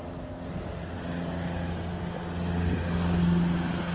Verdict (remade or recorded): recorded